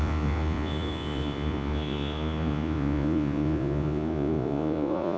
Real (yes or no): no